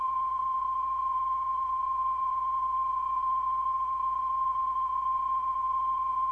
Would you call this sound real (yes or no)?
no